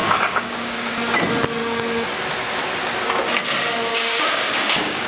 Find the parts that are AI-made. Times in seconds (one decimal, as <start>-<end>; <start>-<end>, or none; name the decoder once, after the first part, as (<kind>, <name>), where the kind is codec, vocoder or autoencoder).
0.0-0.9 (codec, DAC); 1.6-2.2; 3.9-5.1